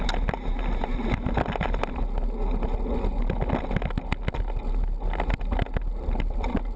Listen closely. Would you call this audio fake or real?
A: real